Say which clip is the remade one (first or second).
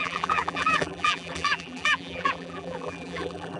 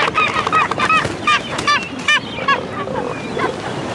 first